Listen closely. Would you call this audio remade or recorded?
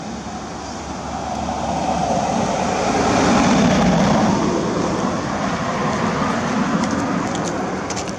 recorded